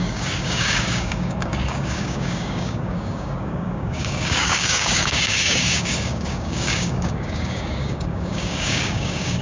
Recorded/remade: remade